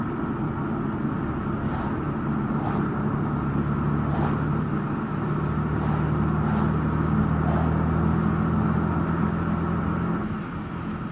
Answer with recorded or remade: recorded